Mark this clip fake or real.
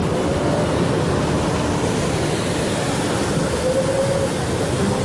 real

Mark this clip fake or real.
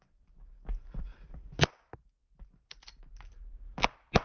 real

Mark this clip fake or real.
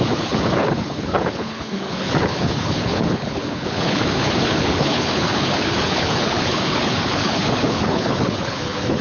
fake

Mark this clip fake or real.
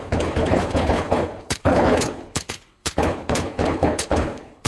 fake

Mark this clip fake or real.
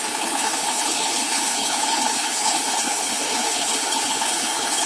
fake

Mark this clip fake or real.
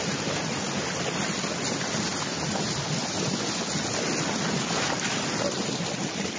real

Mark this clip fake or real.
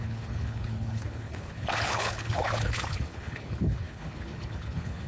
fake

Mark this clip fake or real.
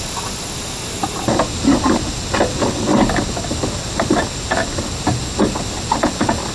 real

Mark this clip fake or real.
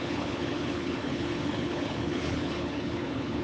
fake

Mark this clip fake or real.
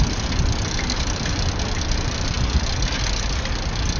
real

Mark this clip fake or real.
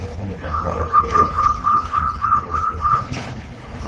fake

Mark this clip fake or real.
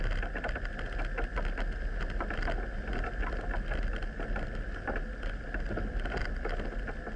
real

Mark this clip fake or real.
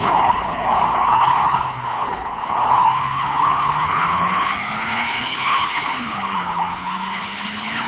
fake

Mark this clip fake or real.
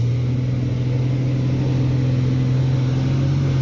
real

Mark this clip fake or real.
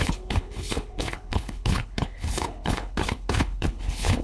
fake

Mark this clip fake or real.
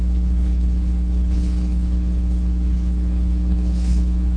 fake